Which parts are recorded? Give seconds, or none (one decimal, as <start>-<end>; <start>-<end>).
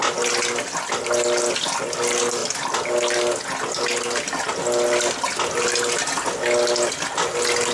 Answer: 0.0-7.7